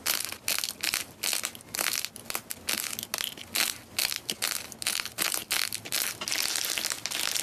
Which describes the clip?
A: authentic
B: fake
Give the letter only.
A